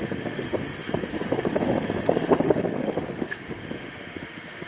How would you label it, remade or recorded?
remade